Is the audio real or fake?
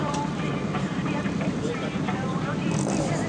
fake